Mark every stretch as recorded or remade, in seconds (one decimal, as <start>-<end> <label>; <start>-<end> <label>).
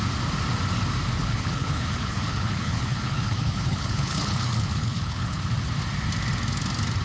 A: 0.0-1.2 recorded; 1.2-5.4 remade; 5.4-7.0 recorded